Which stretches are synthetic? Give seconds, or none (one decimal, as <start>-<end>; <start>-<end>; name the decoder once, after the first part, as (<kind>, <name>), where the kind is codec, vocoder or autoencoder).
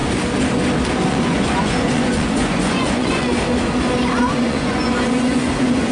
1.1-3.3 (vocoder, Vocos); 4.2-5.9